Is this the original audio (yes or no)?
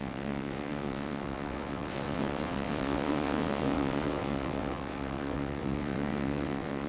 no